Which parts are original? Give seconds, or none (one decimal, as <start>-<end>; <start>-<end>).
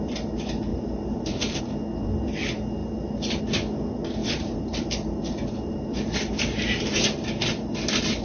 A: 0.0-0.7; 1.6-2.8; 3.4-4.2; 7.1-8.2